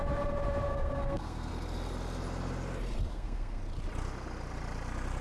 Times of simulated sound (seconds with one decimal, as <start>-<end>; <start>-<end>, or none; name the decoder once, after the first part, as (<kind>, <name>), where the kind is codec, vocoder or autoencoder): 0.7-1.5 (codec, SNAC); 3.1-3.6